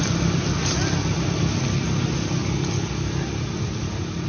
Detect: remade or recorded recorded